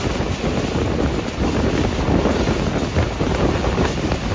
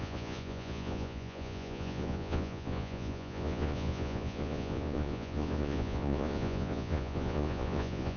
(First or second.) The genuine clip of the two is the first